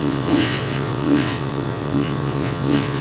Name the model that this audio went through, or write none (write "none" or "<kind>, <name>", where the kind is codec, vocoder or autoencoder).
vocoder, WaveNeXt